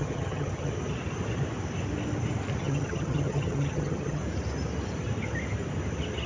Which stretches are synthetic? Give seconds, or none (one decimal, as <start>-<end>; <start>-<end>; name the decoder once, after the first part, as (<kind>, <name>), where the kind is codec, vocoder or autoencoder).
0.0-0.7 (vocoder, HiFi-GAN); 2.6-4.2